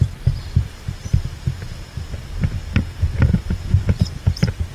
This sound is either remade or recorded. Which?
remade